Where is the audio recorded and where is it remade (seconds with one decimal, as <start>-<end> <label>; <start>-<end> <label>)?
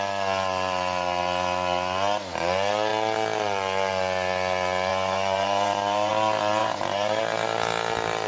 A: 0.0-4.9 recorded; 4.9-6.1 remade; 6.1-6.6 recorded; 6.6-7.2 remade; 7.2-8.3 recorded